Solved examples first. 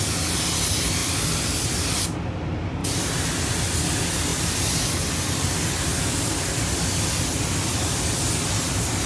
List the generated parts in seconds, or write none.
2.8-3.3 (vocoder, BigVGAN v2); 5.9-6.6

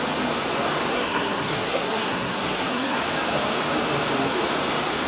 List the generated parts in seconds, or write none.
0.9-3.0 (codec, SNAC)

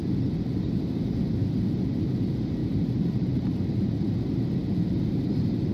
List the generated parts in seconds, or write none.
2.6-4.1 (vocoder, BigVGAN v2)

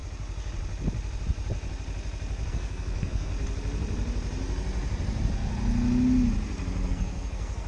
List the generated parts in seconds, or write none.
2.5-3.3 (codec, SNAC); 6.9-7.7

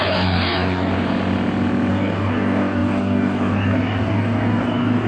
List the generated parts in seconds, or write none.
0.0-0.9 (codec, DAC); 1.9-5.1

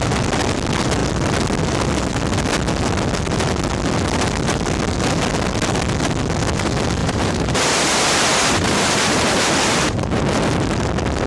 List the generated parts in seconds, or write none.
7.0-10.2 (vocoder, BigVGAN v2)

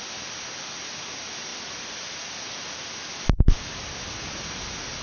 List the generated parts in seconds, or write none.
1.5-4.4 (vocoder, BigVGAN v2)

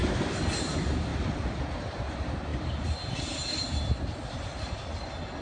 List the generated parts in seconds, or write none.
none